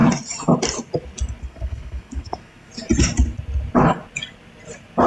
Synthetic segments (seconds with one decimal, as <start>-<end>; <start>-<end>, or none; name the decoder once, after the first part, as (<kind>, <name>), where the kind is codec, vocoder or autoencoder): 1.4-2.7 (codec, SNAC)